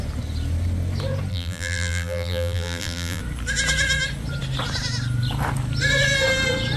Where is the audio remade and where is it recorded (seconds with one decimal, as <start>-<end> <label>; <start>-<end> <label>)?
0.0-1.3 recorded; 1.3-3.2 remade; 3.2-6.8 recorded